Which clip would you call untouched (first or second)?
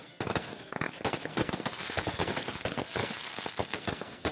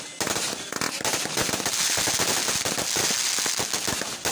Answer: second